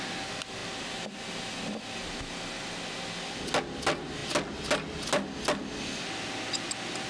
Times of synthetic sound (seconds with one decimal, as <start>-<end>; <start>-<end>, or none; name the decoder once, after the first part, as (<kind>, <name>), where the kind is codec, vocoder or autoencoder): none